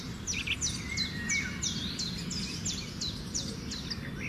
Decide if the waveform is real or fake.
real